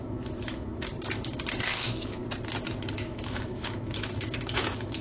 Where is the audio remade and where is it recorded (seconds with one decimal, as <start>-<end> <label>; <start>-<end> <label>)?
0.0-0.9 remade; 0.9-1.8 recorded; 1.8-2.2 remade; 2.2-2.9 recorded; 2.9-5.0 remade

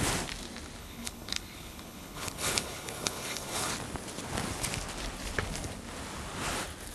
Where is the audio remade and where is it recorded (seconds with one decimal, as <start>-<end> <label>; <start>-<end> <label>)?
0.0-0.8 recorded; 0.8-3.7 remade; 3.7-6.9 recorded

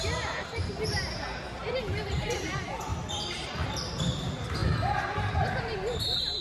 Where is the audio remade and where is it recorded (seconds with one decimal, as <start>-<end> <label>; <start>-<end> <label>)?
0.0-4.6 remade; 4.6-5.6 recorded; 5.6-6.4 remade

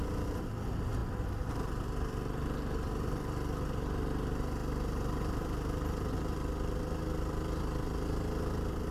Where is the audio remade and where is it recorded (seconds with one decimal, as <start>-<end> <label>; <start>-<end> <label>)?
0.0-8.9 recorded